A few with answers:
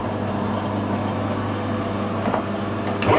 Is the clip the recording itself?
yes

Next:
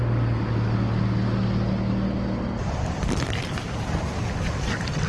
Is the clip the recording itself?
yes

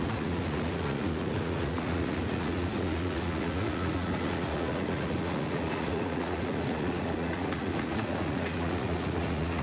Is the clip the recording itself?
no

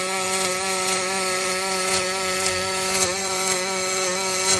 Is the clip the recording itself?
no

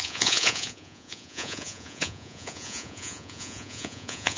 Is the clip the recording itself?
no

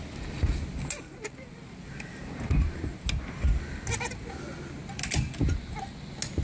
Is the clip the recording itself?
yes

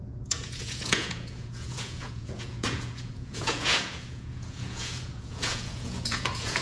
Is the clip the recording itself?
no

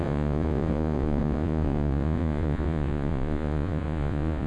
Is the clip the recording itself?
no